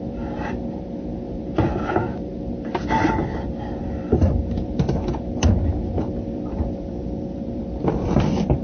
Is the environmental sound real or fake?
fake